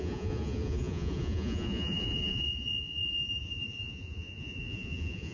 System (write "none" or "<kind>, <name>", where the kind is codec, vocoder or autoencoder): vocoder, Vocos